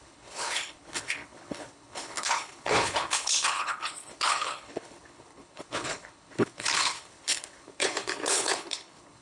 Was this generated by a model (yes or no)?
yes